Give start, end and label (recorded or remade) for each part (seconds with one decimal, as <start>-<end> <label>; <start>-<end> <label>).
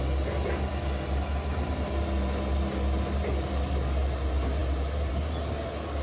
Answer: 0.0-6.0 recorded